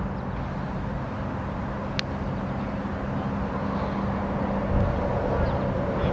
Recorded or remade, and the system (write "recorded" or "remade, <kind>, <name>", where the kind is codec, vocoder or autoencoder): recorded